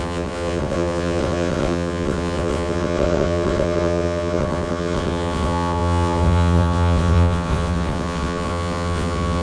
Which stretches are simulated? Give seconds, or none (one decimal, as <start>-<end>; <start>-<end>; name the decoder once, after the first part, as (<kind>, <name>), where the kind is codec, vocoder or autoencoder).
0.0-9.4 (vocoder, WaveNeXt)